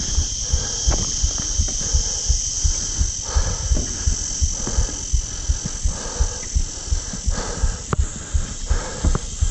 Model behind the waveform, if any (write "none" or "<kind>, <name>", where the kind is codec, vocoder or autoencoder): none